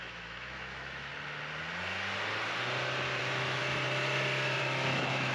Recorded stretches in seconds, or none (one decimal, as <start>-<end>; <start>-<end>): 1.1-3.2; 3.6-4.6